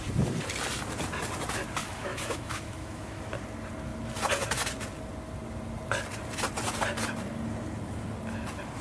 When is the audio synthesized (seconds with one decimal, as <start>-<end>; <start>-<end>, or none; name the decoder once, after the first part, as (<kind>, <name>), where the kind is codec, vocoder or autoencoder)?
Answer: 1.8-3.2 (autoencoder, DAC-VAE)